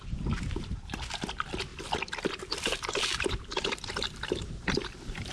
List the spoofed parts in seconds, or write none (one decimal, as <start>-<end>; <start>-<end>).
none